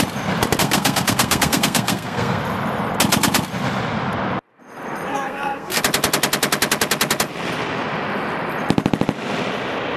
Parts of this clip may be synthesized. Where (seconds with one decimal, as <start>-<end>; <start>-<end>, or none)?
0.6-2.4; 5.1-5.8